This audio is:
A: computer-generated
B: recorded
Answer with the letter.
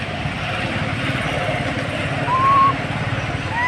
B